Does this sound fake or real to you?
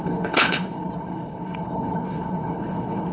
fake